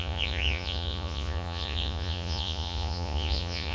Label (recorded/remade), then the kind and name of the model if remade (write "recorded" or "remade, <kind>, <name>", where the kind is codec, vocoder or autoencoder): remade, vocoder, Vocos